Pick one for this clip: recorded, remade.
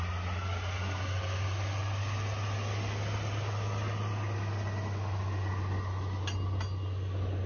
recorded